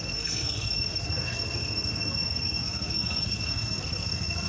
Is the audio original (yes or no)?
no